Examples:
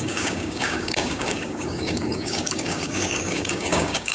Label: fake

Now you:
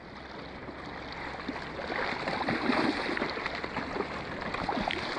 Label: real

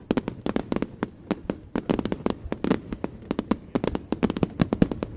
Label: real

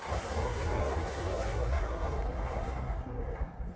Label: fake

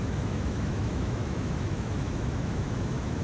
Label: fake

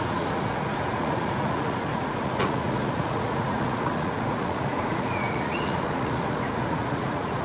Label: fake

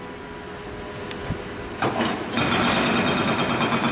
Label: real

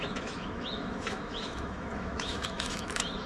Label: fake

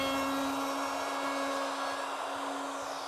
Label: real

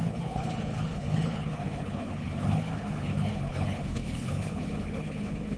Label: fake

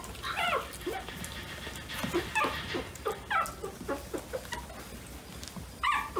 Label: real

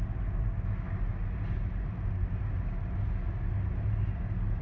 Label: real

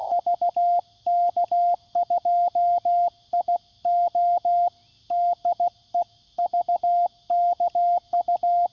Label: real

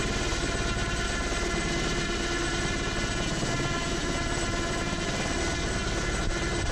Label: real